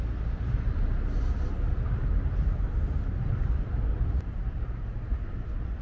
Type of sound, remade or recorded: recorded